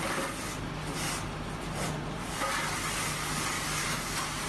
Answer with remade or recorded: recorded